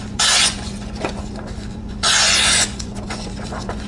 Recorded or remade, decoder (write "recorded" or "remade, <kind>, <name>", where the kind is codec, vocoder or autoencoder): remade, vocoder, Vocos